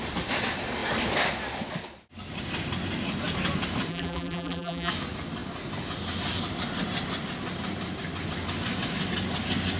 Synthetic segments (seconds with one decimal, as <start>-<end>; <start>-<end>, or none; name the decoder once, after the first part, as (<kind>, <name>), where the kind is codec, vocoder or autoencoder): 3.9-4.9 (vocoder, BigVGAN v2)